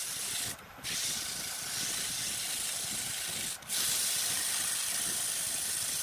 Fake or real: real